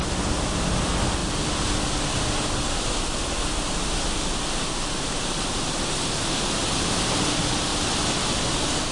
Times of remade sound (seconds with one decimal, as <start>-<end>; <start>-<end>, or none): 1.2-5.8